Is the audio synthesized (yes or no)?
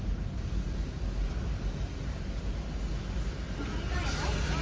no